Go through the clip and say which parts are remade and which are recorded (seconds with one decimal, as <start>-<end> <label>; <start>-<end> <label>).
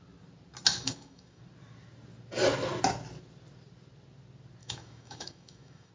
0.0-0.7 recorded; 0.7-1.4 remade; 1.4-4.6 recorded; 4.6-5.9 remade